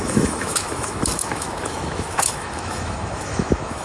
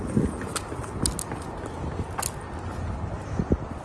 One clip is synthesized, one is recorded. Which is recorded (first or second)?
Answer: second